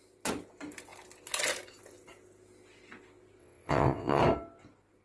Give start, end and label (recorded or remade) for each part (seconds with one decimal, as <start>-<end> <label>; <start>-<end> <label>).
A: 0.0-3.4 recorded; 3.4-4.2 remade; 4.2-5.0 recorded